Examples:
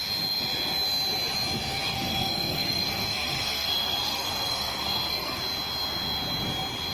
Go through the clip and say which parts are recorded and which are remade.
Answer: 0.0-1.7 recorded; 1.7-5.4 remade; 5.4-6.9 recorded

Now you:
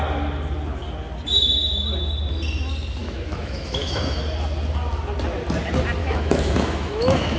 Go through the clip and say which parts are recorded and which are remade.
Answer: 0.0-3.0 recorded; 3.0-4.2 remade; 4.2-6.0 recorded; 6.0-7.4 remade

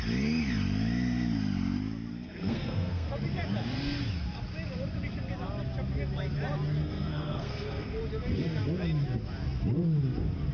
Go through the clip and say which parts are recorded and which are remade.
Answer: 0.0-2.1 recorded; 2.1-3.1 remade; 3.1-6.8 recorded; 6.8-8.0 remade; 8.0-10.5 recorded

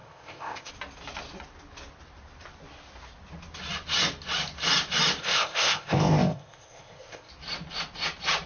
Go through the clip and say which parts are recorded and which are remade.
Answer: 0.0-0.7 remade; 0.7-5.2 recorded; 5.2-7.3 remade; 7.3-8.5 recorded

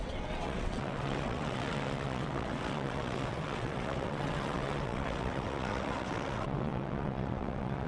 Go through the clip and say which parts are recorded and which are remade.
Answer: 0.0-7.9 remade

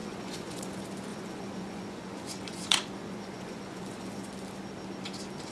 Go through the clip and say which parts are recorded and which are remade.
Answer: 0.0-0.7 remade; 0.7-1.1 recorded; 1.1-4.3 remade; 4.3-5.5 recorded

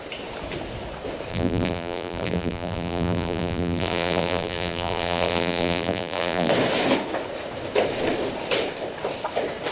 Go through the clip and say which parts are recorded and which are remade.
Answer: 0.0-1.3 recorded; 1.3-6.5 remade; 6.5-9.7 recorded

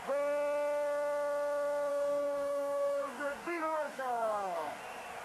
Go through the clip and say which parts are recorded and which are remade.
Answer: 0.0-1.9 recorded; 1.9-4.8 remade; 4.8-5.2 recorded